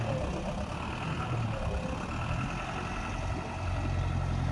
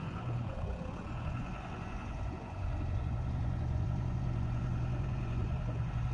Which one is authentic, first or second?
first